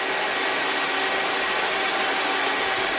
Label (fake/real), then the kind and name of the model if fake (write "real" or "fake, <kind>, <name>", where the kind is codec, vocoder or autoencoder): real